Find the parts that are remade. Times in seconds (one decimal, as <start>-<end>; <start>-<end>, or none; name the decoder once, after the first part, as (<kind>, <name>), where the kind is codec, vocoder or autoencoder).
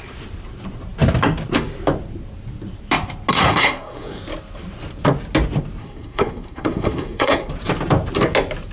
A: 3.3-4.2 (codec, SNAC); 5.8-7.5